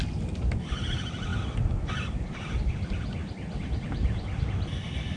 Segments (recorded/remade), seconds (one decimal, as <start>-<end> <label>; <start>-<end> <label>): 0.0-5.2 recorded